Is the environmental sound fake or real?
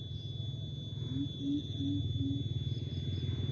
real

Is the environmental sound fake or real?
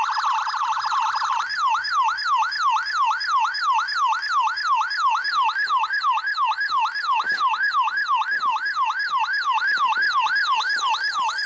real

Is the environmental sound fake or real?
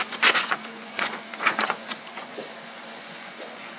fake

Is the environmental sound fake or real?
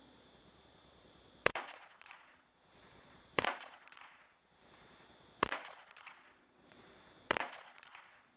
fake